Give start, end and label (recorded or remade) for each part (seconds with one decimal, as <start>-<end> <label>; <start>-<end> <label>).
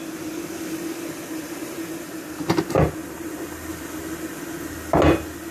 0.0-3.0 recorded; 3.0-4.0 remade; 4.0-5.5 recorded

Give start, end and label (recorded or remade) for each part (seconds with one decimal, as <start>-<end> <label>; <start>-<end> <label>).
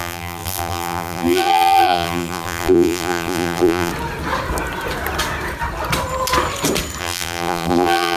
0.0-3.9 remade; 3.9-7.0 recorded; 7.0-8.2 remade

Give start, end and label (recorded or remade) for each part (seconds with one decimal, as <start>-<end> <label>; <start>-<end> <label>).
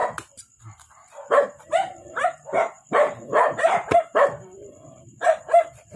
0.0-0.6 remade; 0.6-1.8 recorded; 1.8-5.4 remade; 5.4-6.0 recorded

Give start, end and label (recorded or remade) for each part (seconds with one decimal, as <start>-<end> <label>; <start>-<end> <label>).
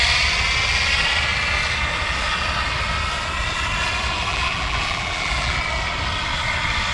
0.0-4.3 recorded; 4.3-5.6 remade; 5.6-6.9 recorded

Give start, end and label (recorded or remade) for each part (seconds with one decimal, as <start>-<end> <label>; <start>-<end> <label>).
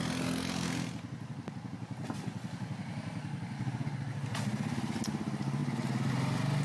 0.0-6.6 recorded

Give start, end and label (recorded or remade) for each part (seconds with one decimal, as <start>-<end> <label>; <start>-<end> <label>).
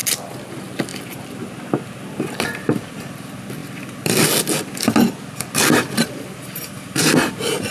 0.0-0.5 recorded; 0.5-0.9 remade; 0.9-2.1 recorded; 2.1-3.6 remade; 3.6-5.9 recorded; 5.9-7.7 remade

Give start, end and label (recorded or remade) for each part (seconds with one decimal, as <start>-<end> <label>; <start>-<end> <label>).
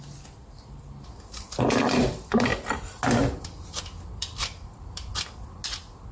0.0-2.5 remade; 2.5-4.1 recorded; 4.1-5.1 remade; 5.1-6.1 recorded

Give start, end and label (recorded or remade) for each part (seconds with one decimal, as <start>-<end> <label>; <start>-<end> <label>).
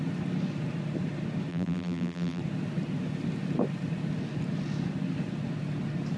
0.0-1.5 recorded; 1.5-2.4 remade; 2.4-6.2 recorded